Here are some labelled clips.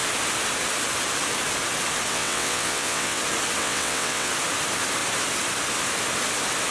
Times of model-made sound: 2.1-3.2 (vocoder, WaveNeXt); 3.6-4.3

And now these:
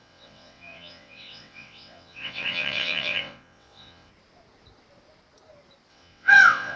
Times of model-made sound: 0.0-4.1 (vocoder, WaveNeXt); 5.9-6.8

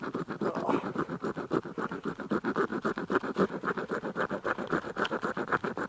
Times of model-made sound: none

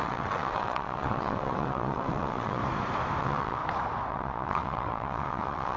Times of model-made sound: 0.0-2.6 (vocoder, WaveNeXt); 3.2-3.6; 4.1-5.8